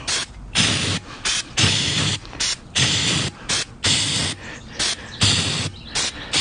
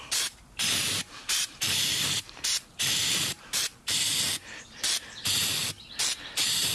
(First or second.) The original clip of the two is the first